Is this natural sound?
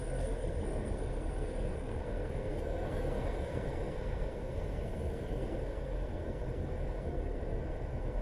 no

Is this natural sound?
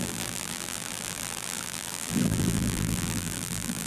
no